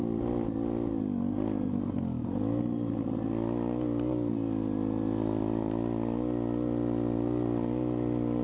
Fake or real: real